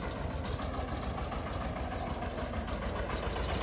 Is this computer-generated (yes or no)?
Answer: no